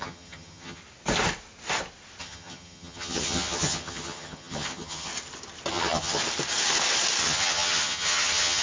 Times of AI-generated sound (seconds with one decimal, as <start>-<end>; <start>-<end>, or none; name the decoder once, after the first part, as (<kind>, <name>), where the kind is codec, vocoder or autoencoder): 0.0-0.8 (vocoder, HiFi-GAN); 2.2-5.1; 5.7-6.2; 7.2-8.6